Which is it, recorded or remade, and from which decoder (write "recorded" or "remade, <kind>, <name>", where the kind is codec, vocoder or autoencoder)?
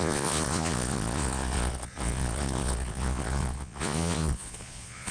remade, vocoder, Vocos